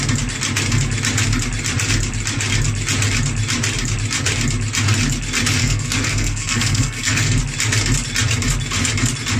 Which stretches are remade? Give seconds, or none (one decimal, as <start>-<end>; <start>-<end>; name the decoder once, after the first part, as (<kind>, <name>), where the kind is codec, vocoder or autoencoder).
5.6-7.4 (codec, SNAC)